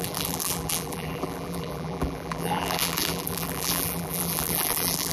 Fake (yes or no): yes